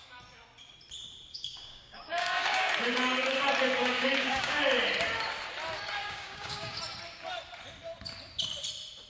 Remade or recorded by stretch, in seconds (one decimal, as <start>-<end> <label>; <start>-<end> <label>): 0.0-1.3 recorded; 1.3-2.7 remade; 2.7-3.8 recorded; 3.8-4.6 remade; 4.6-6.0 recorded; 6.0-6.8 remade; 6.8-9.1 recorded